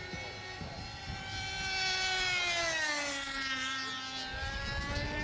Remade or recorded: recorded